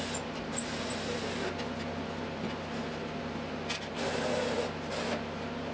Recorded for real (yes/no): yes